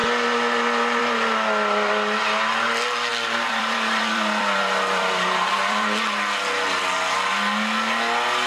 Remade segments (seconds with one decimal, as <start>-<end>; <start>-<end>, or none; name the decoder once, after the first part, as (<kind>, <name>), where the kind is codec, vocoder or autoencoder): 3.1-6.8 (vocoder, BigVGAN v2)